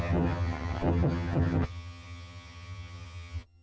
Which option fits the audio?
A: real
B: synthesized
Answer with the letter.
B